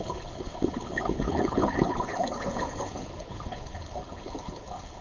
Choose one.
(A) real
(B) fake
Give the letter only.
B